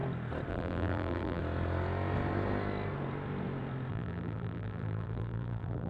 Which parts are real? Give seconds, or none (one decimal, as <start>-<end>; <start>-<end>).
0.0-0.5; 1.4-3.9